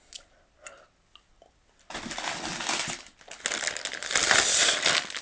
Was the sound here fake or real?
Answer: real